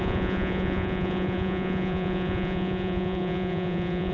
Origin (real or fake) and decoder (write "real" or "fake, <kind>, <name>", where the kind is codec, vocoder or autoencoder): fake, vocoder, Vocos